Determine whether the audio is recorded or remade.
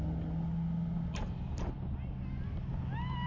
recorded